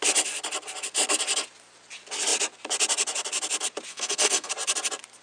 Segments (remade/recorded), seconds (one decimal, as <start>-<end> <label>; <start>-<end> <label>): 0.0-3.9 recorded; 3.9-4.5 remade; 4.5-5.2 recorded